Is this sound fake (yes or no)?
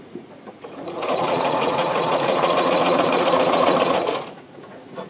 yes